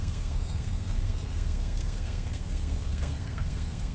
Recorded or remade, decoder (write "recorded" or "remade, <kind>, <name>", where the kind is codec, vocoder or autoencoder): remade, codec, SNAC